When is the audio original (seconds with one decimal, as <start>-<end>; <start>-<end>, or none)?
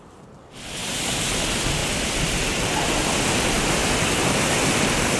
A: 0.0-0.8; 1.3-1.8; 3.3-5.2